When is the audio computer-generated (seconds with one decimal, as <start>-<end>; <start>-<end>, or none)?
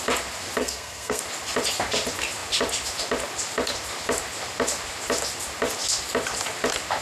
0.6-1.2